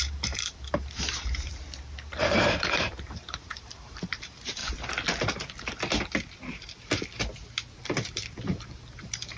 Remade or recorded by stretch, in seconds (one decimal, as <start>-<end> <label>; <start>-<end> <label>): 0.0-1.5 remade; 1.5-2.1 recorded; 2.1-4.6 remade; 4.6-7.8 recorded; 7.8-9.4 remade